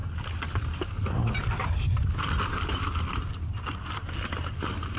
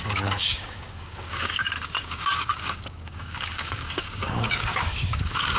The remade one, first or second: second